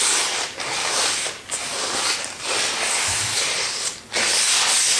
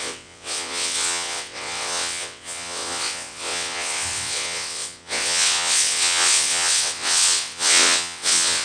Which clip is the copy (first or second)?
second